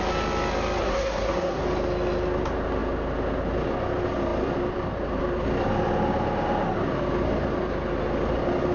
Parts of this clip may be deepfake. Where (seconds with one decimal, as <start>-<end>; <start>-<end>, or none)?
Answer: 0.8-1.6